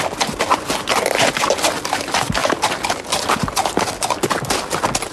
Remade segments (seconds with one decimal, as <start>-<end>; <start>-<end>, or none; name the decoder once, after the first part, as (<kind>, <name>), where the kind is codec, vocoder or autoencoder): 0.5-1.1 (vocoder, Vocos)